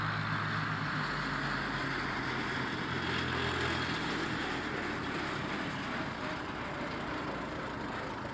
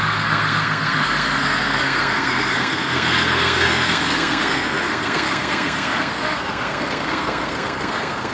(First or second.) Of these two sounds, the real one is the first